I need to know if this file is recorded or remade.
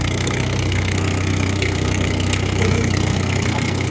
remade